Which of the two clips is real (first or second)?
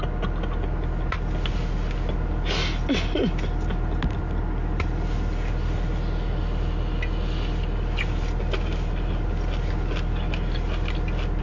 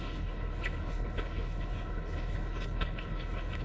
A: first